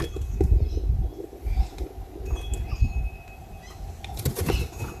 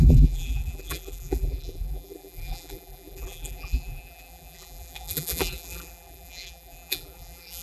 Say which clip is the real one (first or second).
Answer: first